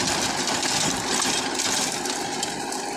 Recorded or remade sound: recorded